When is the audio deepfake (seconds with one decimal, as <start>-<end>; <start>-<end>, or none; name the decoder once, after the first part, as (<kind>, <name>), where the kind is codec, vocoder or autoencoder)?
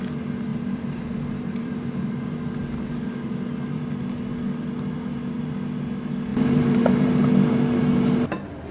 0.5-2.2 (vocoder, BigVGAN v2); 6.3-7.3